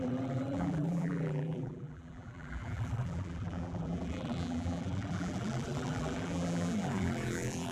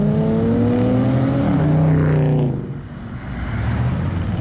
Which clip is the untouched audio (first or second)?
second